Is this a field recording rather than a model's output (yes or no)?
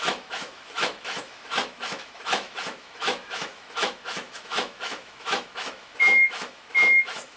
no